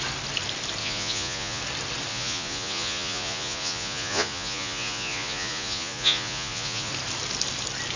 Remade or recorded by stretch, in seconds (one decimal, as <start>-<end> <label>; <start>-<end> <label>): 0.0-0.8 recorded; 0.8-1.6 remade; 1.6-2.1 recorded; 2.1-6.9 remade; 6.9-8.0 recorded